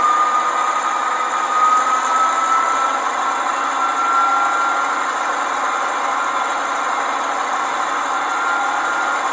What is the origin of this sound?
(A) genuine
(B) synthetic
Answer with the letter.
A